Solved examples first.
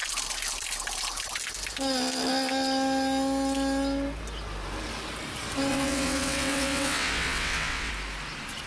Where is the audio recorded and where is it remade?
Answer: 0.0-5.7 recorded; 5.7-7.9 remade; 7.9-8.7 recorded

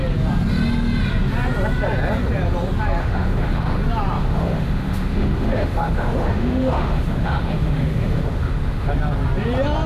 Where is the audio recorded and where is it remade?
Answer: 0.0-3.0 recorded; 3.0-3.8 remade; 3.8-4.2 recorded; 4.2-8.9 remade; 8.9-9.9 recorded

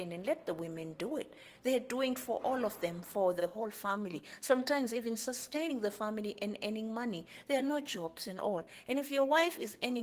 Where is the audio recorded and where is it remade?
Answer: 0.0-3.4 recorded; 3.4-5.7 remade; 5.7-7.6 recorded; 7.6-10.0 remade